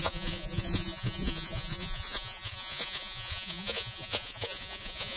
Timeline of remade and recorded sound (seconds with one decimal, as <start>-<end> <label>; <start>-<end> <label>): 0.0-5.2 remade